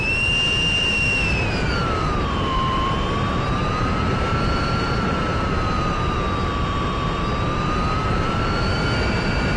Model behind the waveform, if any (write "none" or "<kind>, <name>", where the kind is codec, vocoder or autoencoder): vocoder, BigVGAN v2